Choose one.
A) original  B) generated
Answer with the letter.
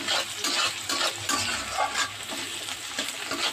A